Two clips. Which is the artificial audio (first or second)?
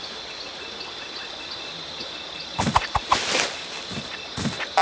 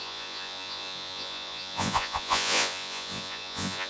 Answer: second